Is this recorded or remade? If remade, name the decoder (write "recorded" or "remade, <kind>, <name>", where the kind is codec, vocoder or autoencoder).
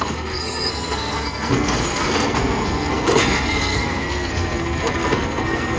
remade, codec, SNAC